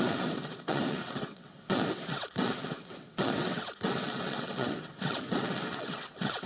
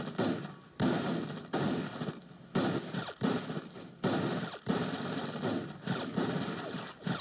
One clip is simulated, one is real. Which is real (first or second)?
second